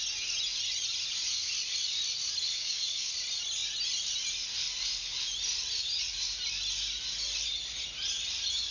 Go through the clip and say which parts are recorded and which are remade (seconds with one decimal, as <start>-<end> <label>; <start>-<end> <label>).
0.0-2.5 recorded; 2.5-3.1 remade; 3.1-8.7 recorded